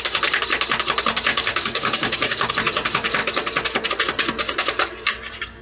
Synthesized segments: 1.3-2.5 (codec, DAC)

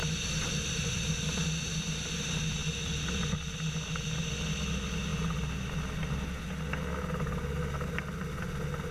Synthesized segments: none

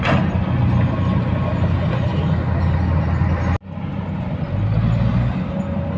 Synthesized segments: none

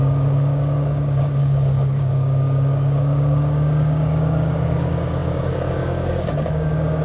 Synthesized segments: 0.0-7.0 (codec, DAC)

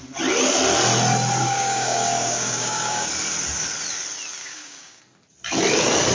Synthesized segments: 1.4-3.1 (codec, DAC); 4.4-5.0

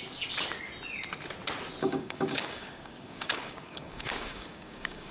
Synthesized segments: 1.8-5.1 (codec, DAC)

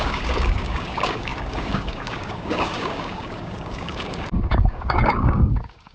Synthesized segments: 0.0-5.9 (codec, DAC)

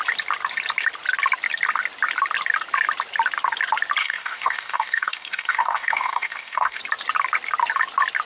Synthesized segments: 4.0-6.8 (codec, DAC)